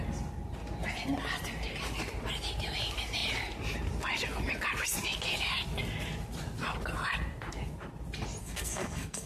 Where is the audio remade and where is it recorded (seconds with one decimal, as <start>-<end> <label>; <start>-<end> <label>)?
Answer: 0.0-8.4 recorded; 8.4-9.3 remade